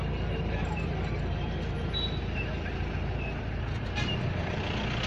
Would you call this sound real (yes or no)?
yes